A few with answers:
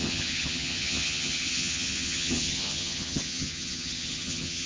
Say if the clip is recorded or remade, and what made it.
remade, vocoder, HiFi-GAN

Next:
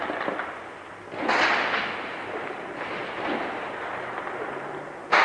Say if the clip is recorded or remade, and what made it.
recorded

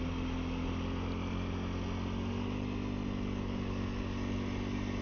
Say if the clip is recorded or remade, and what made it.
recorded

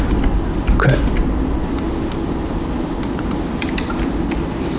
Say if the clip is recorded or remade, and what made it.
recorded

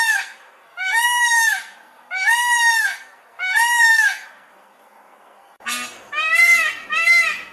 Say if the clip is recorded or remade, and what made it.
remade, codec, SNAC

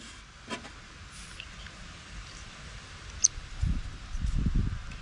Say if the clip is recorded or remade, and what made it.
recorded